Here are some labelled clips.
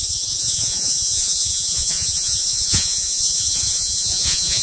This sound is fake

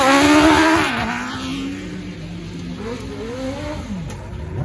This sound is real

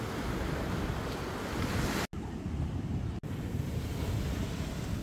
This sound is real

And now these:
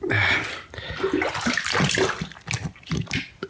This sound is real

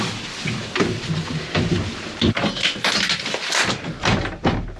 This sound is fake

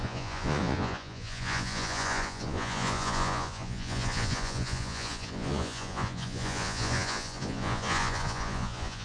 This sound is fake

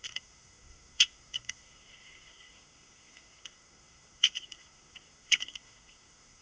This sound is fake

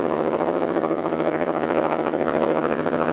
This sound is fake